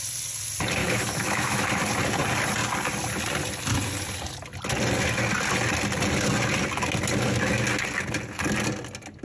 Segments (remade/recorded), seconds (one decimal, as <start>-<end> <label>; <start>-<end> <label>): 0.0-0.8 recorded; 0.8-1.8 remade; 1.8-9.2 recorded